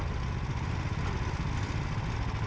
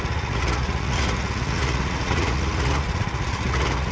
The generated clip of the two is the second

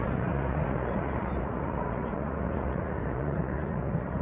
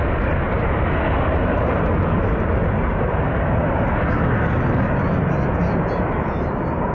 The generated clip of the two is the first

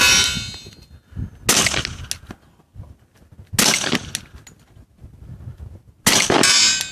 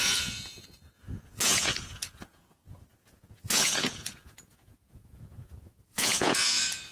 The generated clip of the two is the second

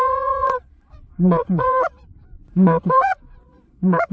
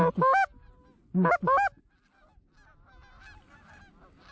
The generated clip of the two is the first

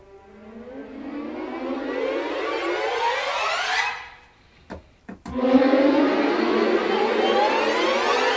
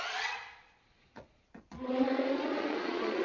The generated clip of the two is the second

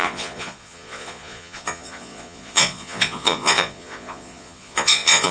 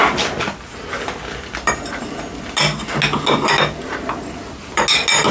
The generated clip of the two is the first